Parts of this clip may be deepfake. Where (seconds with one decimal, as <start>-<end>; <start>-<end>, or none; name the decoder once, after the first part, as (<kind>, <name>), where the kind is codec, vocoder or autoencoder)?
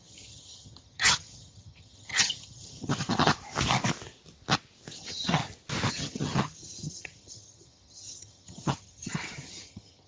0.0-3.3 (vocoder, HiFi-GAN); 5.0-5.4; 5.9-10.1